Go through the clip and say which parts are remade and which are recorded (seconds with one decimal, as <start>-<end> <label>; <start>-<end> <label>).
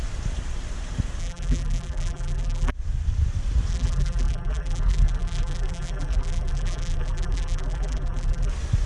0.0-1.2 recorded; 1.2-2.7 remade; 2.7-3.7 recorded; 3.7-8.5 remade; 8.5-8.9 recorded